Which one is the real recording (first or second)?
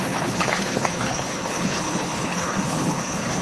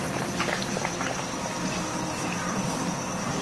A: second